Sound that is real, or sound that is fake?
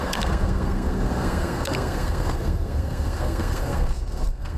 fake